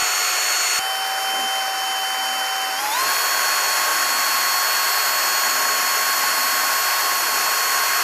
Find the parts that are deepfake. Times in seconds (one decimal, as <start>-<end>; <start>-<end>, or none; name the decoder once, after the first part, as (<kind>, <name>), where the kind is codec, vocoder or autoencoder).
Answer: none